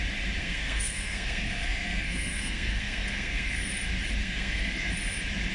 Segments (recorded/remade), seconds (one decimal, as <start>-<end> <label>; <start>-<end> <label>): 0.0-0.4 recorded; 0.4-3.7 remade; 3.7-4.2 recorded; 4.2-4.9 remade; 4.9-5.5 recorded